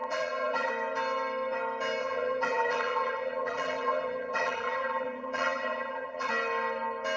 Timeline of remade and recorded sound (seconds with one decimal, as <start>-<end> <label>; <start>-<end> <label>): 0.0-0.7 remade; 0.7-2.0 recorded; 2.0-6.3 remade; 6.3-7.2 recorded